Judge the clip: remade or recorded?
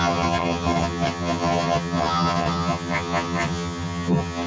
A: remade